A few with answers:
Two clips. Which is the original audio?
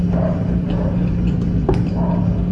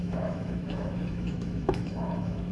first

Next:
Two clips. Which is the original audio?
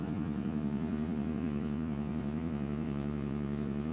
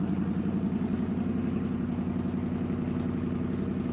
second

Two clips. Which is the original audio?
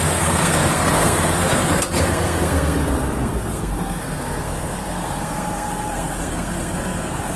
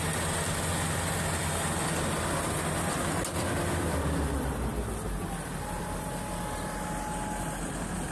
second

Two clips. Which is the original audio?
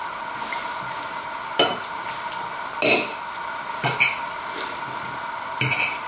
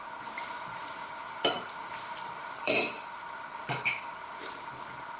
first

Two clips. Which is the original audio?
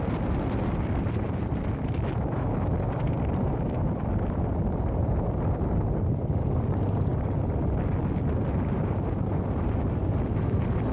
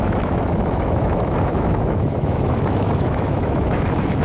first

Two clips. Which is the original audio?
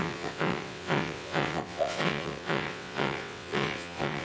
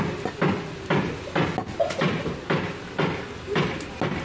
second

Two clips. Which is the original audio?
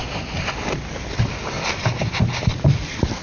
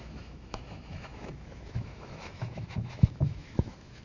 first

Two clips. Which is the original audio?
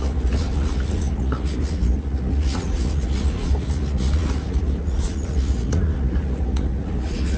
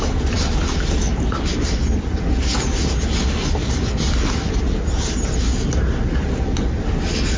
second